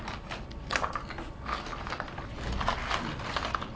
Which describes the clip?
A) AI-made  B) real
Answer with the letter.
B